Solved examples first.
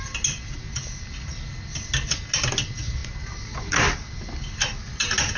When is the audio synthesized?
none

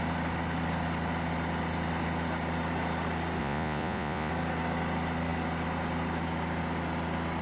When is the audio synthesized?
3.4-4.3 (vocoder, Vocos)

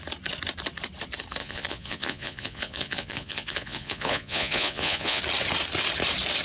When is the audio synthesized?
1.4-5.2 (vocoder, Vocos)

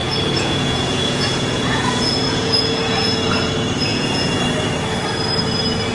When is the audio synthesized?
0.0-3.5 (vocoder, Vocos); 3.9-4.4

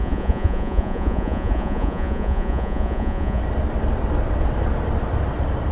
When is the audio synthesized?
0.0-3.4 (vocoder, Vocos)